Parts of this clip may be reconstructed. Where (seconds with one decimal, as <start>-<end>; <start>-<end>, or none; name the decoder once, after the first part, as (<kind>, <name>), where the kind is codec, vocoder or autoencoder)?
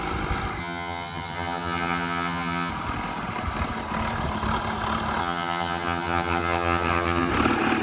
0.6-2.7 (vocoder, HiFi-GAN); 5.2-7.3